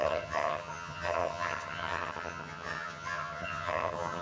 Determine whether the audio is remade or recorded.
remade